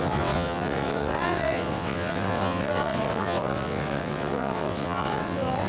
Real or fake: fake